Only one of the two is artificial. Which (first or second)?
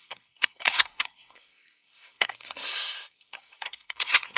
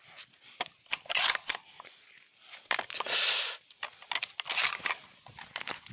first